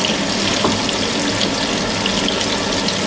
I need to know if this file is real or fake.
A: real